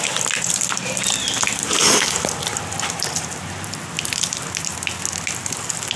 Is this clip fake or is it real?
real